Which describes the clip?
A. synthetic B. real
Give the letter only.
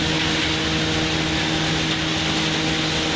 B